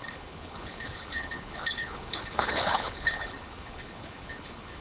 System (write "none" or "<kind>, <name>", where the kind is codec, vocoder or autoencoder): codec, HILCodec